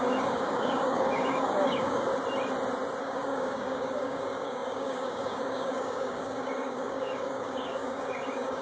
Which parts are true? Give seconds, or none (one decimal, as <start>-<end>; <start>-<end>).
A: 2.1-3.0